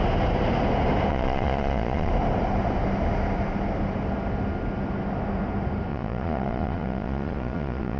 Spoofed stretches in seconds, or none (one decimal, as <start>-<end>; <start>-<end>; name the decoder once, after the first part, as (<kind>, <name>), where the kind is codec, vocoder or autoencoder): 1.1-2.1 (vocoder, Vocos); 5.9-8.0